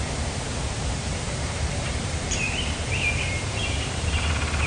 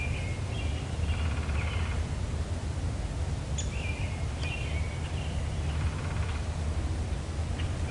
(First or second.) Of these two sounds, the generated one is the first